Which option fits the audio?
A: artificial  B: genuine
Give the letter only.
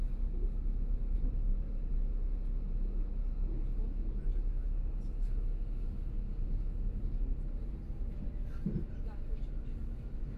B